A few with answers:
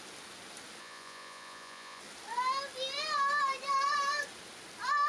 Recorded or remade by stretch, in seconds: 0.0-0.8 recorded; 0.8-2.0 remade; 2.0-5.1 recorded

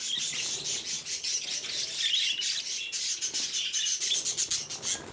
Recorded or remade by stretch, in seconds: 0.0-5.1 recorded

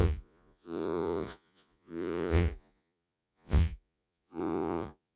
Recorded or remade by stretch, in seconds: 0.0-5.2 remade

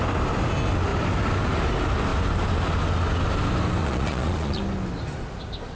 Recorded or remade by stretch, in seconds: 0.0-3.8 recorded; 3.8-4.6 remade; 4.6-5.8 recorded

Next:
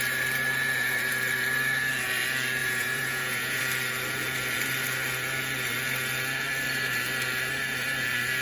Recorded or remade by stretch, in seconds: 0.0-2.6 recorded; 2.6-3.6 remade; 3.6-8.4 recorded